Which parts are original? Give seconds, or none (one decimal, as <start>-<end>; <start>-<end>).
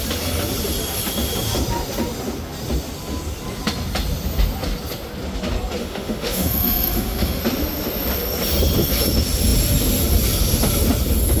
0.0-5.8; 7.4-11.4